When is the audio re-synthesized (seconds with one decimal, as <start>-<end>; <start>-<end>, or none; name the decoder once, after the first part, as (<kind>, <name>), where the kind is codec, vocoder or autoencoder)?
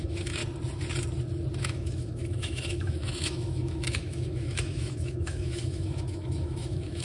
0.0-0.4 (autoencoder, DAC-VAE); 1.6-7.0